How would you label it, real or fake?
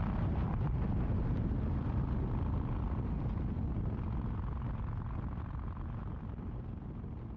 real